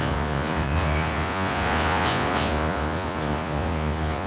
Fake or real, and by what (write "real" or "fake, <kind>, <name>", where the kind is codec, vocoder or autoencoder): fake, vocoder, Vocos